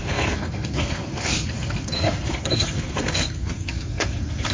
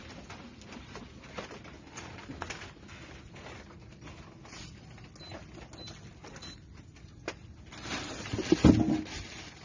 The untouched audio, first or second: second